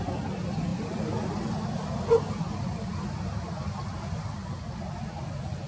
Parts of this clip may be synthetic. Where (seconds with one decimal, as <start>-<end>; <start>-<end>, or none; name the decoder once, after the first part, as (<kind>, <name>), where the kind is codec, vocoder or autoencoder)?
4.4-5.2 (vocoder, BigVGAN v2)